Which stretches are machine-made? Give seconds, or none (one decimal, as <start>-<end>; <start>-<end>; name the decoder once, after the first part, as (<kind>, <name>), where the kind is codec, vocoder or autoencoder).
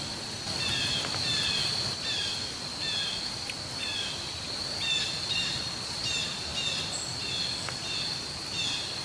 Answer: none